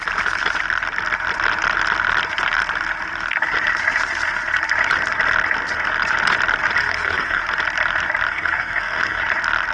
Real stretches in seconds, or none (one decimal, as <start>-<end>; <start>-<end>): 0.0-6.8; 7.4-8.3; 9.2-9.7